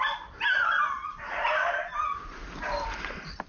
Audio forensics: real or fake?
real